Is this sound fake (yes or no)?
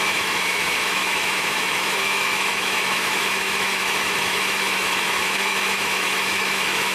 yes